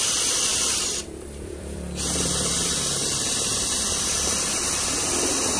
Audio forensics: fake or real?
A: fake